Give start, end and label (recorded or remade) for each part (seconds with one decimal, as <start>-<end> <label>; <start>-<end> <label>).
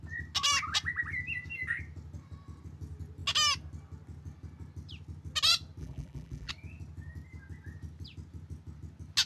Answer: 0.0-5.8 recorded; 5.8-6.5 remade; 6.5-9.3 recorded